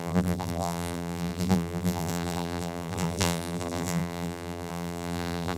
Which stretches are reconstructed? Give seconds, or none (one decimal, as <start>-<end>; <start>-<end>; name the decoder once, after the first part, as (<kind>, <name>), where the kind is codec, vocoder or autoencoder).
0.0-5.6 (vocoder, BigVGAN v2)